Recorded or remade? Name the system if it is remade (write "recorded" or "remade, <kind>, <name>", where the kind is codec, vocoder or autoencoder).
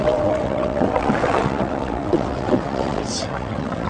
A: remade, vocoder, WaveNeXt